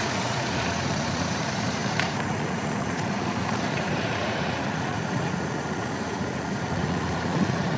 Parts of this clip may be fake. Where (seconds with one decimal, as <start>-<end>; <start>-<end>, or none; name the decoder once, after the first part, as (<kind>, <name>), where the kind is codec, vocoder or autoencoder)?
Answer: 0.0-7.8 (vocoder, Vocos)